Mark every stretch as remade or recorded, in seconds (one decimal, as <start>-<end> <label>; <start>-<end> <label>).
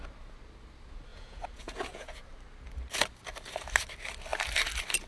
0.0-1.1 recorded; 1.1-2.2 remade; 2.2-5.1 recorded